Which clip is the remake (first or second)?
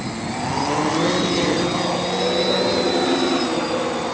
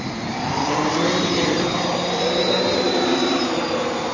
second